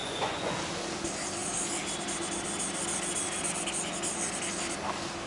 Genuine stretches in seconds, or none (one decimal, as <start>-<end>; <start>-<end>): 0.6-5.3